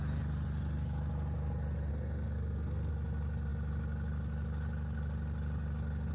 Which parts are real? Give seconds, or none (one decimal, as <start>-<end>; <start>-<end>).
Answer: 0.0-1.9; 2.9-6.1